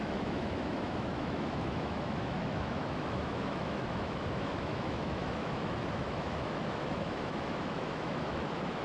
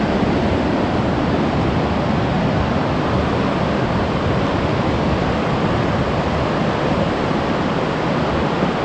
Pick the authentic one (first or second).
second